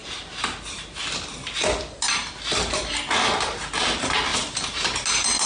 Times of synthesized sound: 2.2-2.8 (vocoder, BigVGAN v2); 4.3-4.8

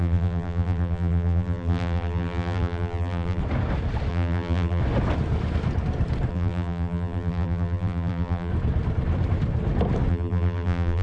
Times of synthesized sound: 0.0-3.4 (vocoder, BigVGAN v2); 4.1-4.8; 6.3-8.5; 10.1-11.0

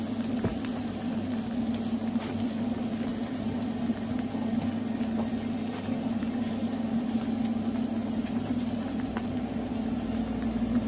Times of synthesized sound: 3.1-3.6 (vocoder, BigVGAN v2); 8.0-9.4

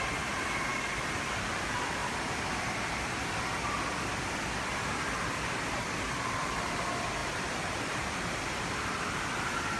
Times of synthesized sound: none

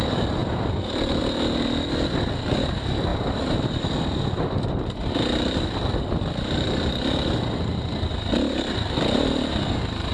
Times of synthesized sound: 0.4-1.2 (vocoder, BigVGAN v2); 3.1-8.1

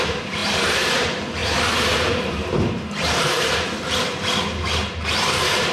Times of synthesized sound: 0.0-4.1 (vocoder, BigVGAN v2); 4.9-5.7